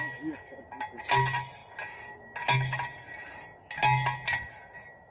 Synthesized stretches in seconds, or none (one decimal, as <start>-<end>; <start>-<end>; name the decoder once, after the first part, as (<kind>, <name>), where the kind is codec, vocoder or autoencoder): none